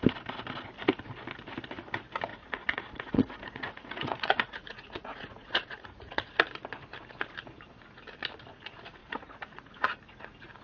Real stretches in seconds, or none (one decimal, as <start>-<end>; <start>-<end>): 0.0-2.3; 6.3-9.0; 10.0-10.6